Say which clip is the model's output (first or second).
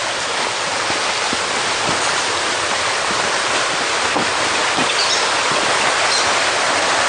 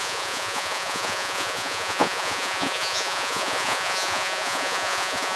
second